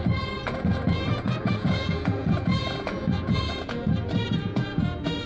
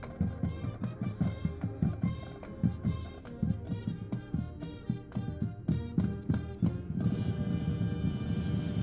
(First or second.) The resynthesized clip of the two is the first